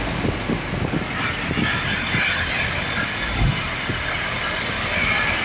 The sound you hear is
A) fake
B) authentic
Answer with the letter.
B